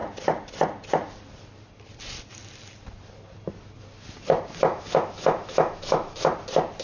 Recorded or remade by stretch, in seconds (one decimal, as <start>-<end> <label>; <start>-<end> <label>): 0.0-4.7 recorded; 4.7-6.3 remade; 6.3-6.8 recorded